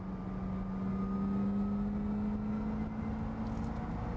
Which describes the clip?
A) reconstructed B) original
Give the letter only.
B